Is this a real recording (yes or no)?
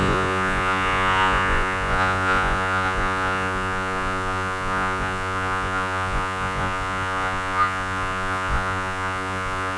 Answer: no